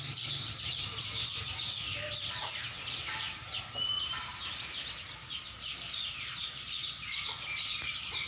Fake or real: fake